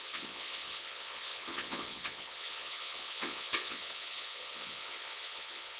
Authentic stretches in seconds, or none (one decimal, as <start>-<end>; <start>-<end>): none

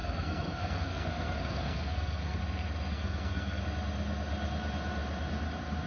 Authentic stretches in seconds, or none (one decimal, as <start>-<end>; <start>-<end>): 2.4-2.9; 3.6-5.9

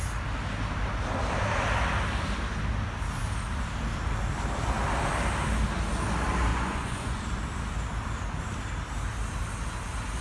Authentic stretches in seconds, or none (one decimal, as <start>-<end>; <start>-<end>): 0.0-6.5; 7.2-10.2

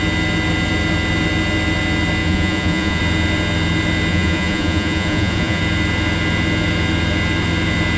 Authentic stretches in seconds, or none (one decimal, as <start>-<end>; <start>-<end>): 0.0-2.2; 3.0-4.1; 5.6-8.0